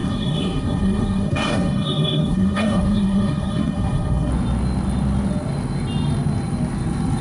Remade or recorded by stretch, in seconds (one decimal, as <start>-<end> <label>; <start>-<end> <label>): 0.0-4.3 remade; 4.3-7.2 recorded